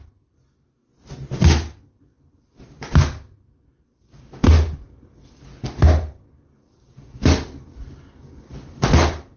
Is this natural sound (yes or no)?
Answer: yes